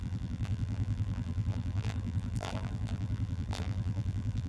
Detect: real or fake fake